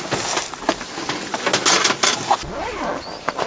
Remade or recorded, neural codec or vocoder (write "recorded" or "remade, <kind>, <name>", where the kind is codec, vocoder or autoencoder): recorded